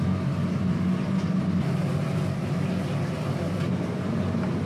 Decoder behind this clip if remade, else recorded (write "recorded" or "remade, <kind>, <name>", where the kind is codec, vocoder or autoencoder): recorded